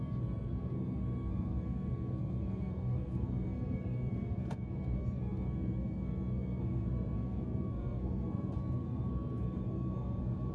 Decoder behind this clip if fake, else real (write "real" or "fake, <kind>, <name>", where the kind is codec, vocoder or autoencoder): fake, codec, SNAC